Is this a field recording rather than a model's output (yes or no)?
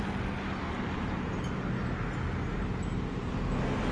yes